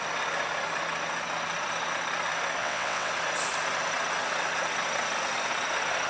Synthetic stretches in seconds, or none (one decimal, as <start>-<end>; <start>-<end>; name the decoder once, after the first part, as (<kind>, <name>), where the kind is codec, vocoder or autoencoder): 2.6-3.1 (vocoder, WaveNeXt)